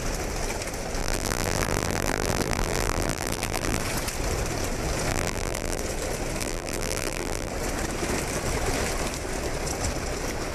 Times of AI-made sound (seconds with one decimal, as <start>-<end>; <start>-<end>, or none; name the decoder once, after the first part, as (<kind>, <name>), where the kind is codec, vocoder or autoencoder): 1.0-3.8 (vocoder, BigVGAN v2); 5.1-5.8; 6.4-7.5